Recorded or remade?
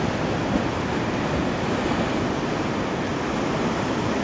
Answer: recorded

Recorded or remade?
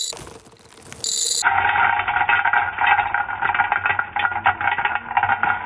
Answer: recorded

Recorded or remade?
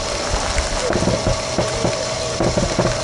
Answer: recorded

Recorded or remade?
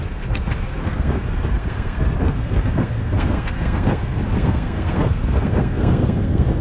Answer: remade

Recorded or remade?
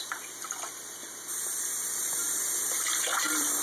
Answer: remade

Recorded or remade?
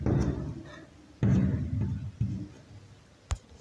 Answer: recorded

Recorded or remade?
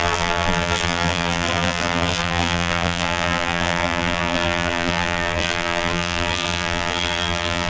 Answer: remade